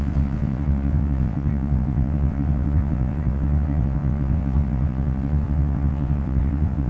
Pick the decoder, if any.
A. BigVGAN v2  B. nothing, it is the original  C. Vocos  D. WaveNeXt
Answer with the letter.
D